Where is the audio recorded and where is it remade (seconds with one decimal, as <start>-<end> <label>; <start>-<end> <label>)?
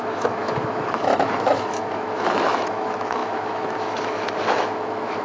0.0-5.2 remade